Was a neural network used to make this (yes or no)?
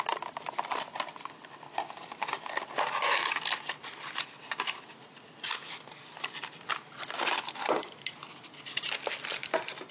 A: no